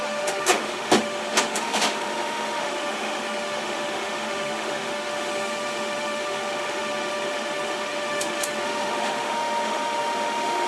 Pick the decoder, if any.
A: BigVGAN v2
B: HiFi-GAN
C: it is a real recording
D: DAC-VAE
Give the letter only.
D